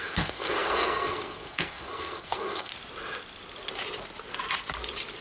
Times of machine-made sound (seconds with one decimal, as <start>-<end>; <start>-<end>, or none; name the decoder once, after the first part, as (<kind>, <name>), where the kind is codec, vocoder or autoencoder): 0.0-2.7 (codec, SNAC)